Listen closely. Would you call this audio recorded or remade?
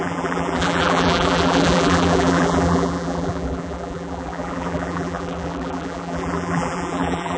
remade